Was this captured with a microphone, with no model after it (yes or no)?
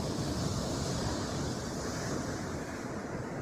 yes